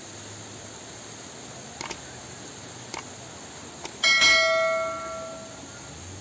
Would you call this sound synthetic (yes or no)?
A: no